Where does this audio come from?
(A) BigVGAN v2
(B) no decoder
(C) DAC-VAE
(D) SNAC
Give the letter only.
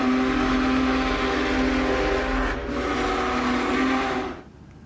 B